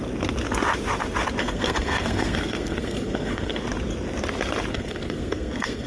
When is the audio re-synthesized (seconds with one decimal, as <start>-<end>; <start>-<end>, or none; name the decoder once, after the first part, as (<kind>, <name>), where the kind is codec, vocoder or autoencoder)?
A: 1.4-3.6 (codec, SNAC); 4.7-5.9